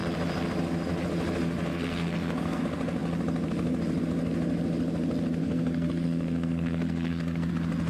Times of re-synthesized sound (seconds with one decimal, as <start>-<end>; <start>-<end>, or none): 1.7-2.6; 5.4-7.5